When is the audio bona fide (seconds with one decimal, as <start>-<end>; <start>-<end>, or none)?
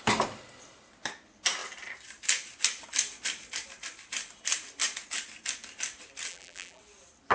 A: 0.0-6.3; 6.8-7.3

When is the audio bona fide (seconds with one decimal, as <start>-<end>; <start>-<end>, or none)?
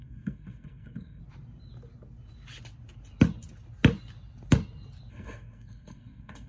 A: 1.2-5.1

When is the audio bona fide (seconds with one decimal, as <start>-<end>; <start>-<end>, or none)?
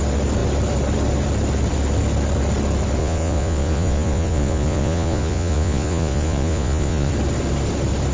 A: 0.0-3.0; 7.1-8.1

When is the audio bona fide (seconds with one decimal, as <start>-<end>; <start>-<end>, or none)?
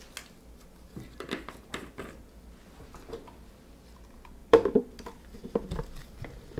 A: 0.0-4.4; 5.6-6.6